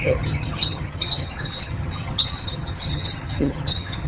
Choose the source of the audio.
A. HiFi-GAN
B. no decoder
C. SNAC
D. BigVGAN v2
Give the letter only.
A